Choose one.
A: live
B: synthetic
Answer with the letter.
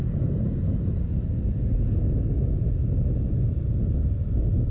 A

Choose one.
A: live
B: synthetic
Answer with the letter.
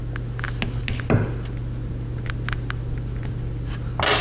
A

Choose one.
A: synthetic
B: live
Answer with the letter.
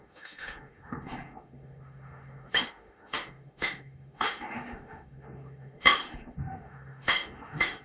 A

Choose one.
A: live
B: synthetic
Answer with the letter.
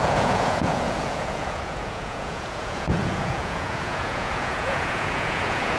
B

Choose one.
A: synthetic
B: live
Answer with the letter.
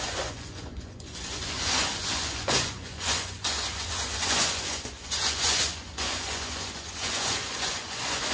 A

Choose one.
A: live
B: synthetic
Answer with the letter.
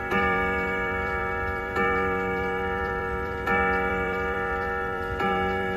B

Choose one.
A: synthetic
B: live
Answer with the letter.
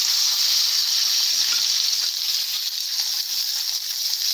B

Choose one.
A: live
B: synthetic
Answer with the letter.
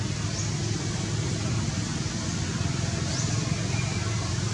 A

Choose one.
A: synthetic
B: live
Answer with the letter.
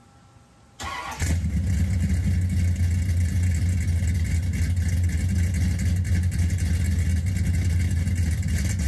B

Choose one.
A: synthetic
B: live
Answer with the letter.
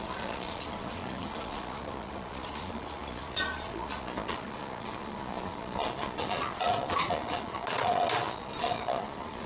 A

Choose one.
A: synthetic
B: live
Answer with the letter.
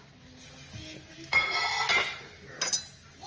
B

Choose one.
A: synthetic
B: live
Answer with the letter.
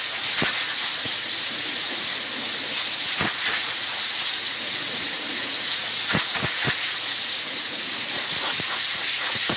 A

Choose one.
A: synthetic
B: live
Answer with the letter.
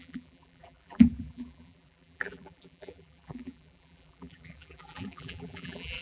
A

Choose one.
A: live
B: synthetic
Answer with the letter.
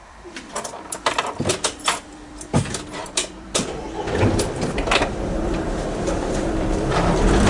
B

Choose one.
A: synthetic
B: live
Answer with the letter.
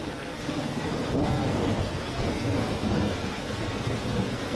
A